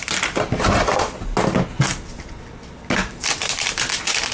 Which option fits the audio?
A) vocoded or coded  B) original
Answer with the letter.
B